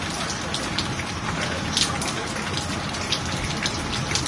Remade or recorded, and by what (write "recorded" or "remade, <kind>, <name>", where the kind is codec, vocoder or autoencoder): recorded